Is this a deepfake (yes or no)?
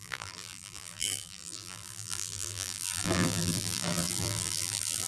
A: yes